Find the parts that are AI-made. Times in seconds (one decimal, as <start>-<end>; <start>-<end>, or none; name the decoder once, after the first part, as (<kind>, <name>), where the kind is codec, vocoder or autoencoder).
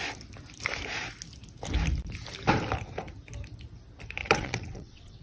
4.2-5.2 (vocoder, WaveNeXt)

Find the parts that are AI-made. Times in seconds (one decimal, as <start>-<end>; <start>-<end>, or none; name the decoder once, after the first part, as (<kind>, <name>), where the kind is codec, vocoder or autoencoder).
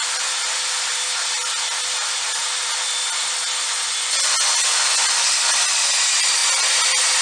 none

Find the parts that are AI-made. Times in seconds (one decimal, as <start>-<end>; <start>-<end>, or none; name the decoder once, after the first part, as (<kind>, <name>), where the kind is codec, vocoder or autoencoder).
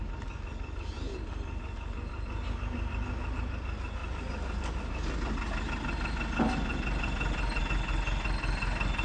none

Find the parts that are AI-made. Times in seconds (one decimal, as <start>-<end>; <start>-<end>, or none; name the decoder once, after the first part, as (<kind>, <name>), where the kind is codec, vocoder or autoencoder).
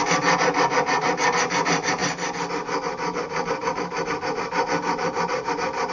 none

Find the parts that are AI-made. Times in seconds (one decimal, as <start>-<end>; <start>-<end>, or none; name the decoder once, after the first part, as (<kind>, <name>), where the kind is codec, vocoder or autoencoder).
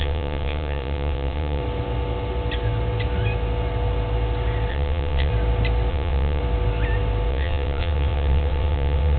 0.0-1.6 (vocoder, WaveNeXt); 4.7-5.3; 5.9-6.4; 7.3-9.2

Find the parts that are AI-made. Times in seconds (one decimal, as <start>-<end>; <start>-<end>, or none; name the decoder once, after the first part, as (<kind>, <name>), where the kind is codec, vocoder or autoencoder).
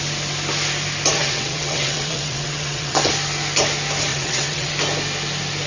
1.2-3.1 (vocoder, WaveNeXt); 4.1-4.7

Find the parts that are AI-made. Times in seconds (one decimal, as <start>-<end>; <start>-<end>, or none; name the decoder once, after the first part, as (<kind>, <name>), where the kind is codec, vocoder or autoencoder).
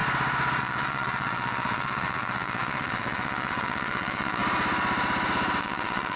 0.6-4.4 (vocoder, WaveNeXt); 5.6-6.2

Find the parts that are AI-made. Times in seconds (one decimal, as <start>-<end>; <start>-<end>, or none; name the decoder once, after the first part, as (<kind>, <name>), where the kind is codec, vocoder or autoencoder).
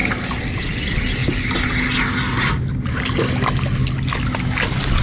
none